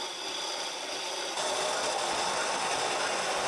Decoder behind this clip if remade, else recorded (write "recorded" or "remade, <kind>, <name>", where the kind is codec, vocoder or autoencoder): remade, vocoder, BigVGAN v2